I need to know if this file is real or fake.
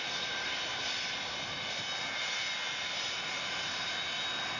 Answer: fake